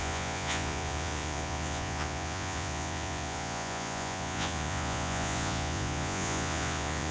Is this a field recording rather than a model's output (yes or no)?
no